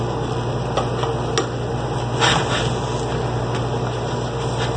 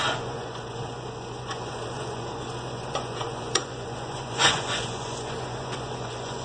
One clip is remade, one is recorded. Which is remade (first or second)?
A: second